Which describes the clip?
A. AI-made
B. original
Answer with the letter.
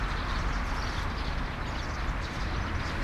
A